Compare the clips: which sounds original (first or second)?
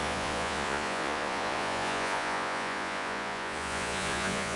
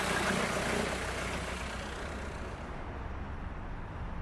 second